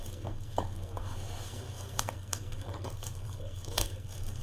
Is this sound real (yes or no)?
no